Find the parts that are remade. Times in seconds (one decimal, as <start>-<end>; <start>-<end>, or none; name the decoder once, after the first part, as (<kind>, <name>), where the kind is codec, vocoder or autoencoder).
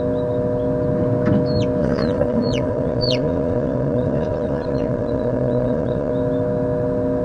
1.8-6.1 (vocoder, Vocos)